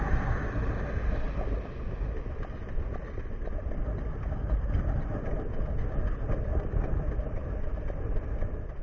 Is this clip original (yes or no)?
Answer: yes